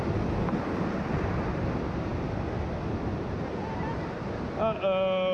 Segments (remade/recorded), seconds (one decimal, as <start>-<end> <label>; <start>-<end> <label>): 0.0-5.3 recorded